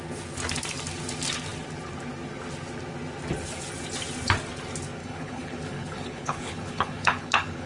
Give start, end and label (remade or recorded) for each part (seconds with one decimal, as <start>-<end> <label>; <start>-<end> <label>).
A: 0.0-5.0 recorded; 5.0-7.7 remade